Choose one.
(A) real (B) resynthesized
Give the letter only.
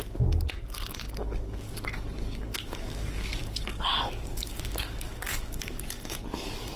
B